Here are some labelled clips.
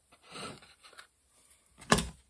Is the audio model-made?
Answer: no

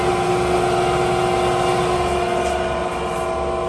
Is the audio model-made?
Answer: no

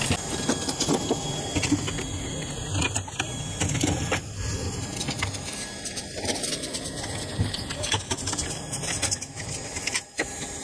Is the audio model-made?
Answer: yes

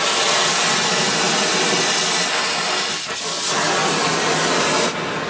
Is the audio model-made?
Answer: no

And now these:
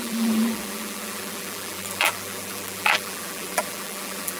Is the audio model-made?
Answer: yes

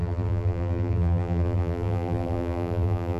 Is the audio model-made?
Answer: yes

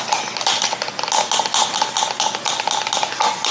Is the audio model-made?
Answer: no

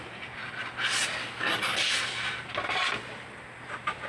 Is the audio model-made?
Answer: no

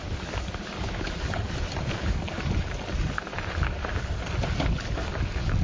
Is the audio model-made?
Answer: yes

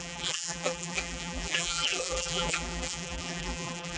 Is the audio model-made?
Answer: yes